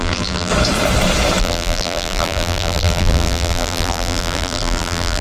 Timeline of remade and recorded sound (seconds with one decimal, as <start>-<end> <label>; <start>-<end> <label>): 0.0-0.5 remade; 0.5-1.4 recorded; 1.4-5.2 remade